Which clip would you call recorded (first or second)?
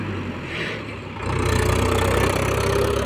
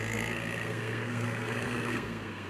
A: first